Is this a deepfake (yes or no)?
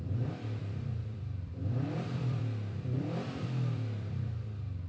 yes